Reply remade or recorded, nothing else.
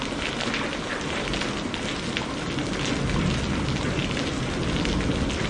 recorded